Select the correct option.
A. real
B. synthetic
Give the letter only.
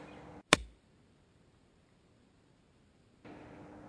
A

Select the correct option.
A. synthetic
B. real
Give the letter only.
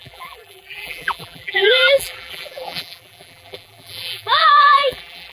A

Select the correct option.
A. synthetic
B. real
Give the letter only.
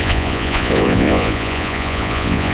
A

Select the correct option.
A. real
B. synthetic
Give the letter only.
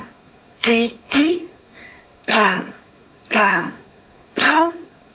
B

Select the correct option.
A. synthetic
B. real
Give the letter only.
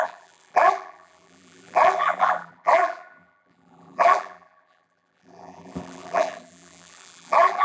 A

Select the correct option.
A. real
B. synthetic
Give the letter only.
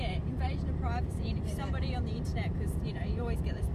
B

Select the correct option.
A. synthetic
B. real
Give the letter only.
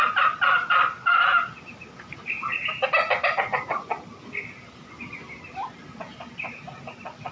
B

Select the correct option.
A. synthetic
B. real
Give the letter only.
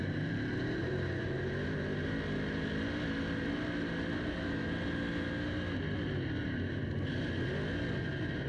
B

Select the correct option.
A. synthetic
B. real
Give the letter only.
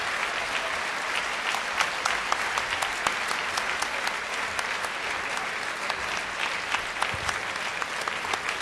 B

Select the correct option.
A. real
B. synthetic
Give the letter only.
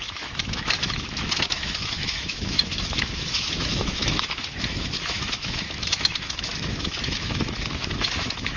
B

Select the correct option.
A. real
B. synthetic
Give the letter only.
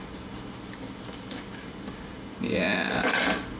A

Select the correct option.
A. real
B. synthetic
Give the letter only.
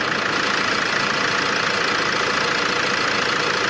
A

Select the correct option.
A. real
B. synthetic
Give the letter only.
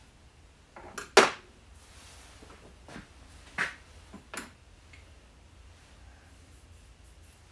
A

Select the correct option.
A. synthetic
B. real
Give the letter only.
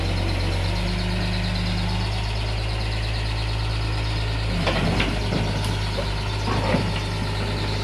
B